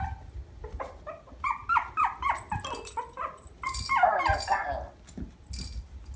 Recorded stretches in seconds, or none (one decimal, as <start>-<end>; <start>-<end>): 0.0-6.2